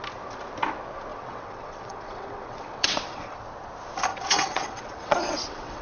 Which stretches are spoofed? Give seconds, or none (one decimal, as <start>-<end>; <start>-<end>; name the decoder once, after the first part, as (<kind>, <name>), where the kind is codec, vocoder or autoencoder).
1.1-3.4 (vocoder, WaveNeXt); 4.1-5.8